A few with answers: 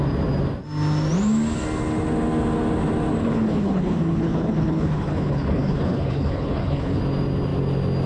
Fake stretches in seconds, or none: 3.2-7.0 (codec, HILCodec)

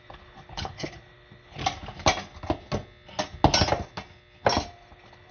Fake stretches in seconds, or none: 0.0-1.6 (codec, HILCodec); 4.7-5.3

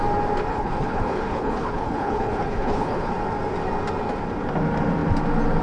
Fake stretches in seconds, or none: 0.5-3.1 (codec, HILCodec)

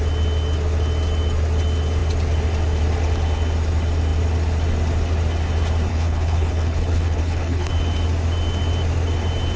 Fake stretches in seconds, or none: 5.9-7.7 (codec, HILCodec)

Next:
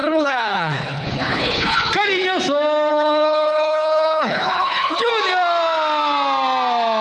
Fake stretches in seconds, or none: 0.0-1.9 (codec, HILCodec); 2.9-5.1